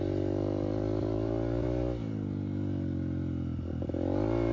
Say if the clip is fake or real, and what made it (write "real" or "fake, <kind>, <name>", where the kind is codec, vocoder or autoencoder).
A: real